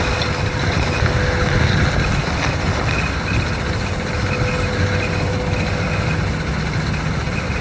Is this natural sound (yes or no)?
yes